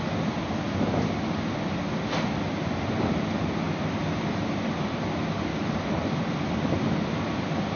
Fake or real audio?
real